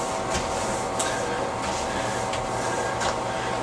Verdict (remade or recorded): recorded